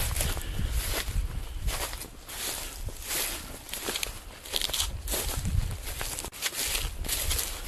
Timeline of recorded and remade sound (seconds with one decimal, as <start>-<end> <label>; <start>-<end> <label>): 0.0-7.7 recorded